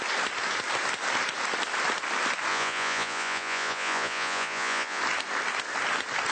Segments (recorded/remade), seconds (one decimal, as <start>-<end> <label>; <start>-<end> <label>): 0.0-2.5 recorded; 2.5-5.0 remade; 5.0-6.3 recorded